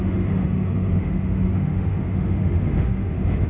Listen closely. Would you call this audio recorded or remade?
remade